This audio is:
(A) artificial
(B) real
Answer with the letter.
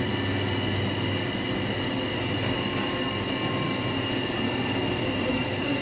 B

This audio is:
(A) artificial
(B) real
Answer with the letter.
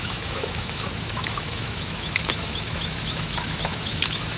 A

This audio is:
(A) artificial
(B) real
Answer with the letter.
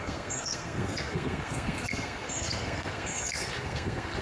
A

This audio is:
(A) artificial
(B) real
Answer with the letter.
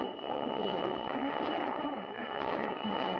A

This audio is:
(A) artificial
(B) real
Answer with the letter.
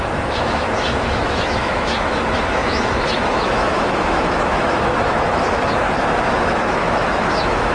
A